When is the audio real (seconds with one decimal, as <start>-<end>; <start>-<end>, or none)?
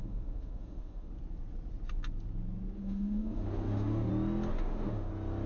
1.1-2.8; 4.1-4.5; 5.1-5.5